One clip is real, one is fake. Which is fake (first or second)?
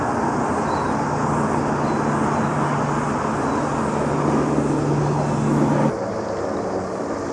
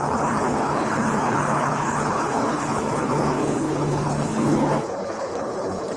second